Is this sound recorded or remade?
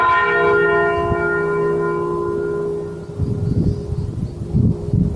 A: recorded